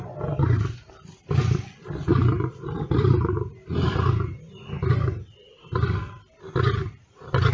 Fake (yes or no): no